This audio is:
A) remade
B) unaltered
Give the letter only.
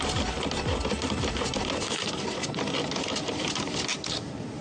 B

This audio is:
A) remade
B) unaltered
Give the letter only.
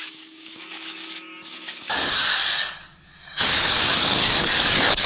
A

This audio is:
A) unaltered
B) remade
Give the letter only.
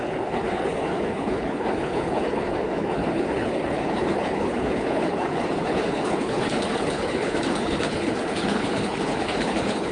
B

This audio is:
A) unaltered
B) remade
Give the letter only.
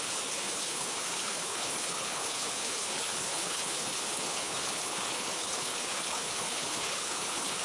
B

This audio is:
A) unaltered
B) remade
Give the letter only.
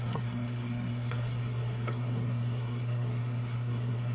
B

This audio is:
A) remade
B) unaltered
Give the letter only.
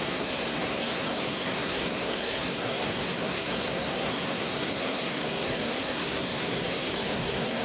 A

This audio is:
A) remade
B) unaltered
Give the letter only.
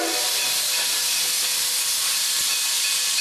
B